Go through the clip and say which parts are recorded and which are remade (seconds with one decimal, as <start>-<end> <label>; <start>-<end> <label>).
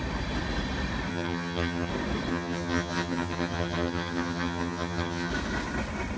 0.0-1.1 recorded; 1.1-1.9 remade; 1.9-2.3 recorded; 2.3-5.3 remade; 5.3-6.2 recorded